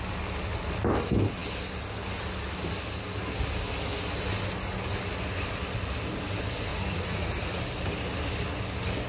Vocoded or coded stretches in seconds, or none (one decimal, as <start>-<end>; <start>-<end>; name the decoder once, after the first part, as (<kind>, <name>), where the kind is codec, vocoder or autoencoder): 6.7-7.6 (vocoder, Vocos)